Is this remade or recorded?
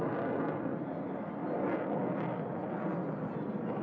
recorded